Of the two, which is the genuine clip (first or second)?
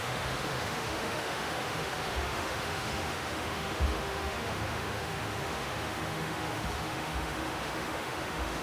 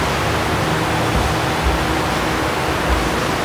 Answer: second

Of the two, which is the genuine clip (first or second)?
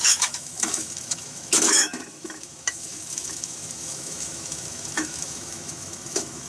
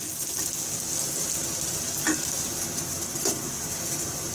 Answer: second